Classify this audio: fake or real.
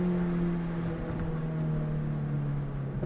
real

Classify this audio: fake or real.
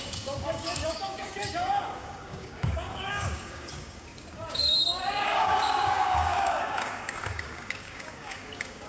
fake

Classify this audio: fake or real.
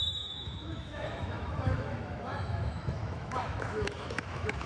fake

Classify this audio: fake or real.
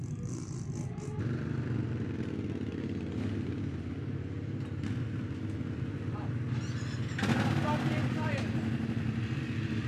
real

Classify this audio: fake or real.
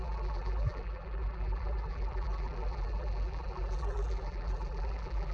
fake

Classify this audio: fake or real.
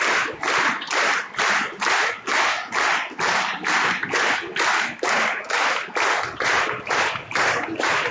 real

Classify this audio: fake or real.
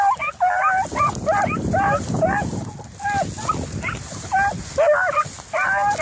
real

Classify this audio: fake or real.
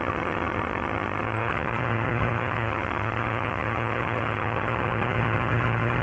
fake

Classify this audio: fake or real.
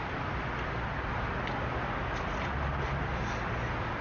real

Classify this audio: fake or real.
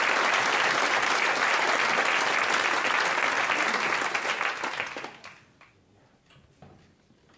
real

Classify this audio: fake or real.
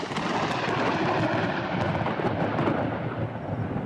real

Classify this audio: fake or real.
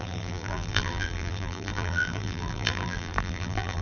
fake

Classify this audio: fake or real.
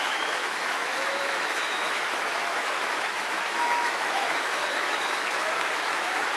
fake